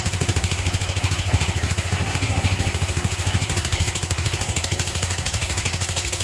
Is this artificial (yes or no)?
yes